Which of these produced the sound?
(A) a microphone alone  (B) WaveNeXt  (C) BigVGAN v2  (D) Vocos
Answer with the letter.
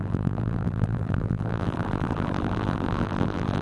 C